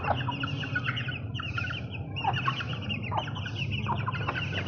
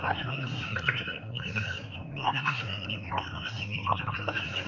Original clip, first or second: first